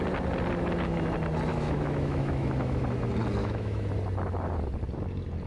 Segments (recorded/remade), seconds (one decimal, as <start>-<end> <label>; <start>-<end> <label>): 0.0-1.5 recorded; 1.5-2.8 remade; 2.8-3.4 recorded; 3.4-3.9 remade; 3.9-5.5 recorded